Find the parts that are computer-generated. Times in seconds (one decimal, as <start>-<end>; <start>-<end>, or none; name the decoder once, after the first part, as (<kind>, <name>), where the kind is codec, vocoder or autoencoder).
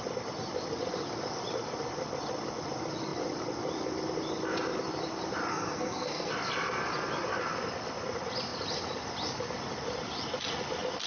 5.5-6.3 (codec, SNAC)